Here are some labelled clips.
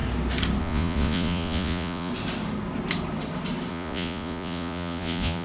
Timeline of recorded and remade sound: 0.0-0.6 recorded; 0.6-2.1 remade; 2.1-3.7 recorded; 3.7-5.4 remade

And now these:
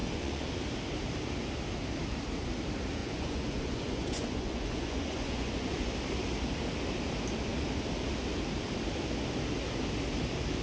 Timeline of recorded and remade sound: 0.0-0.5 remade; 0.5-3.0 recorded; 3.0-5.9 remade; 5.9-10.6 recorded

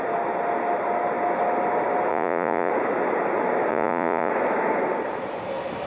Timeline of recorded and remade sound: 0.0-2.1 recorded; 2.1-2.7 remade; 2.7-3.7 recorded; 3.7-4.3 remade; 4.3-5.9 recorded

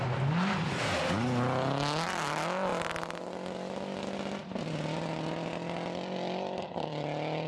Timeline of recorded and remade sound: 0.0-7.5 recorded

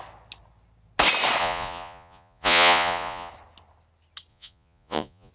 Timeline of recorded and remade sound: 0.0-1.4 recorded; 1.4-3.3 remade; 3.3-4.3 recorded; 4.3-5.3 remade